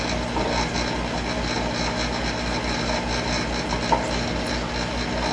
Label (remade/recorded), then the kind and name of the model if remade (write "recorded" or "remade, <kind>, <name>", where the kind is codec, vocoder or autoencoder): recorded